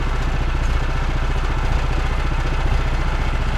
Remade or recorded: recorded